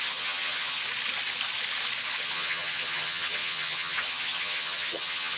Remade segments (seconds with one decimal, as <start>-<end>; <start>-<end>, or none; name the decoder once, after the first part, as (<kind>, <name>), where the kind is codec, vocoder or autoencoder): 0.0-0.8 (vocoder, HiFi-GAN); 2.2-5.4